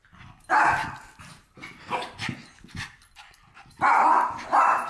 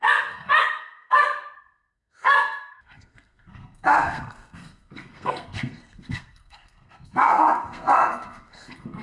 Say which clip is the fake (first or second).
second